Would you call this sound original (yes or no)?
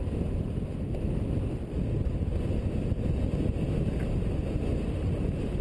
yes